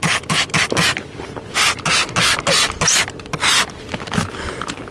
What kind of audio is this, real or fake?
real